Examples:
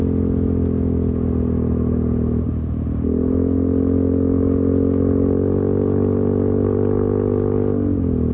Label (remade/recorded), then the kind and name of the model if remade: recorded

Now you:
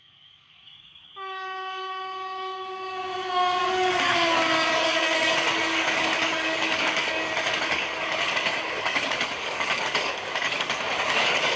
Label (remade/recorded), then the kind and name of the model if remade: remade, codec, DAC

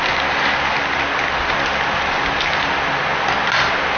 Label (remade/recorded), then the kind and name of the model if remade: recorded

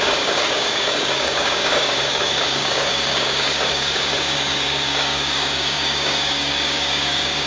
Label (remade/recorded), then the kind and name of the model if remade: remade, codec, DAC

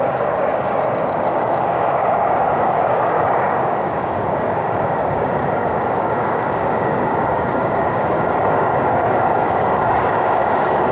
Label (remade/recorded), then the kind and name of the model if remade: remade, codec, DAC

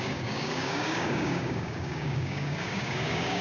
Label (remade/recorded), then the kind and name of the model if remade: remade, codec, DAC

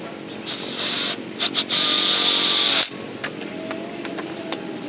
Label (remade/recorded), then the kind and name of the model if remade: recorded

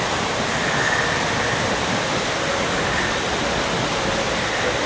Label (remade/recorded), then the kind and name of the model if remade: recorded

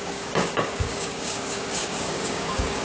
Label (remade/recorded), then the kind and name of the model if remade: remade, codec, DAC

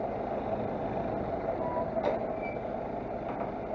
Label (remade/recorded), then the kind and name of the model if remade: recorded